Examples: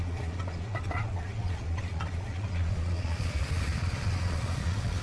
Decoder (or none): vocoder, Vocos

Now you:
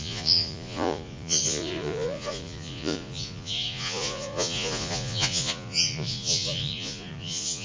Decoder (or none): vocoder, Vocos